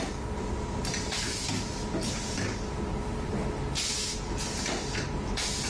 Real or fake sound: real